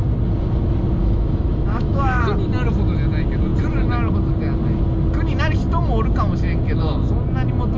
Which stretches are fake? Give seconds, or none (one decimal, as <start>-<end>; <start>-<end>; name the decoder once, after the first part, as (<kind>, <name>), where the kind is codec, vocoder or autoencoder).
1.0-2.2 (autoencoder, DAC-VAE)